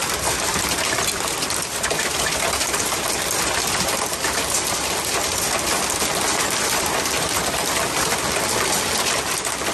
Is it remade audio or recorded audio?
recorded